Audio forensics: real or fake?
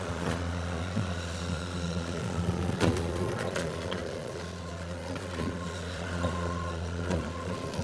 fake